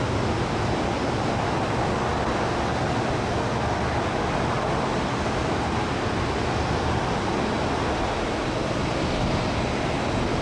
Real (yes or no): yes